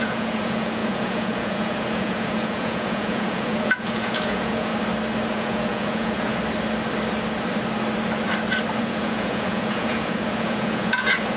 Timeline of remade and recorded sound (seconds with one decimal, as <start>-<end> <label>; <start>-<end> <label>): 0.0-4.7 remade; 4.7-5.3 recorded; 5.3-6.3 remade; 6.3-8.8 recorded; 8.8-11.4 remade